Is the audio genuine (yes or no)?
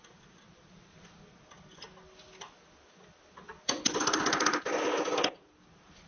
yes